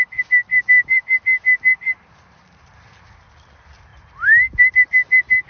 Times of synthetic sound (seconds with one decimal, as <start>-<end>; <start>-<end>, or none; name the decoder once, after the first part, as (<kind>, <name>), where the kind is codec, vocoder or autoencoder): none